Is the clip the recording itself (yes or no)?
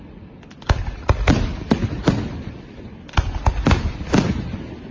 yes